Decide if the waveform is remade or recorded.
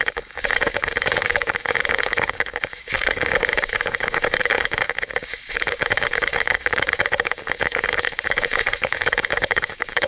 remade